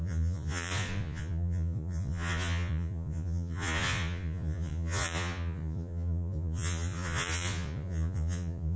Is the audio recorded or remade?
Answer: remade